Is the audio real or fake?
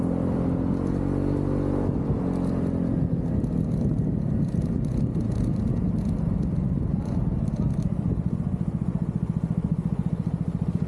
real